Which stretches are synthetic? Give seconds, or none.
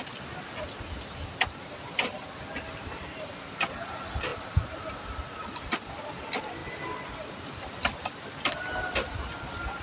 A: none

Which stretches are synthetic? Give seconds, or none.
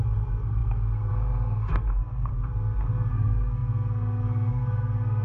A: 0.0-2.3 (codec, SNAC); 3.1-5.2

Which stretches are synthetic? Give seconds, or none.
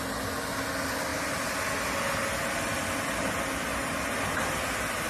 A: none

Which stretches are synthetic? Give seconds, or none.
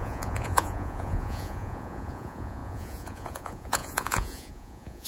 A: 0.0-5.1 (vocoder, Vocos)